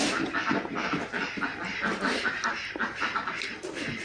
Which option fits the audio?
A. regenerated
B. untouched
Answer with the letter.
B